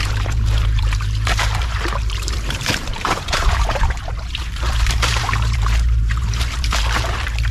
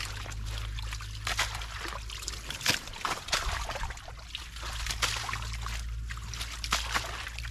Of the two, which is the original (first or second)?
second